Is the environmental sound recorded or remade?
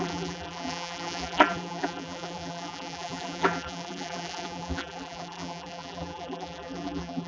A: remade